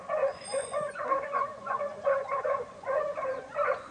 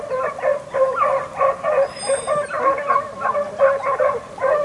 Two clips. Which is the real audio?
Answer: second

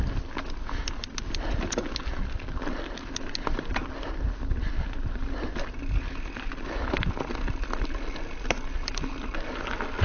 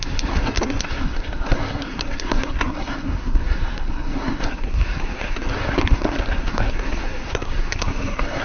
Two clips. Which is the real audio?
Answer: first